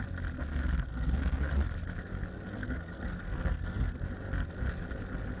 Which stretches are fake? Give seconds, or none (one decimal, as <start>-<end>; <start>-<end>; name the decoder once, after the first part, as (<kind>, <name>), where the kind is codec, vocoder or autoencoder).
0.9-1.5 (codec, SNAC); 2.6-4.0